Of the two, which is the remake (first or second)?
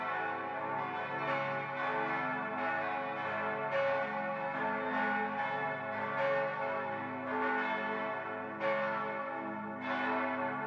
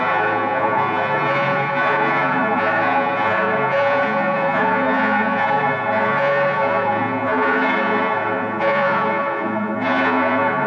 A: second